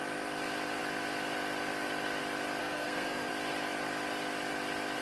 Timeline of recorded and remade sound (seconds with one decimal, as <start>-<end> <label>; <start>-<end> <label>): 0.0-2.6 recorded; 2.6-3.3 remade; 3.3-5.0 recorded